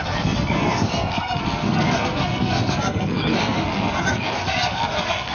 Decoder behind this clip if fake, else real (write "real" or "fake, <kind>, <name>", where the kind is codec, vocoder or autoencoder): fake, codec, SNAC